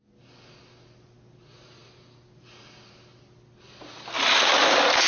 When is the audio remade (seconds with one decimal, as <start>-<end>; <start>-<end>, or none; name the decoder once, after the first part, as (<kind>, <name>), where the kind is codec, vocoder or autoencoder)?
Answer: none